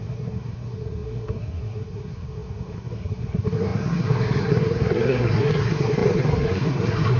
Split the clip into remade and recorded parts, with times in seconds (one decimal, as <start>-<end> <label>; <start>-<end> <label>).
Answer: 0.0-7.2 remade